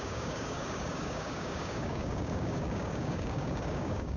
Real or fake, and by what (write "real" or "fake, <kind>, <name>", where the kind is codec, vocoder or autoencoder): fake, codec, DAC